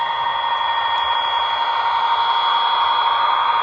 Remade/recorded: recorded